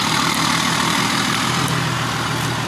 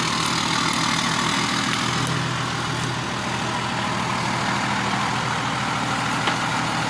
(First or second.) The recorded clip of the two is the second